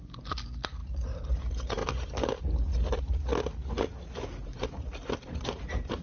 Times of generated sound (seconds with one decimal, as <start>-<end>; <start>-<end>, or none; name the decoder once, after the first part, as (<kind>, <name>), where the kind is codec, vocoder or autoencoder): none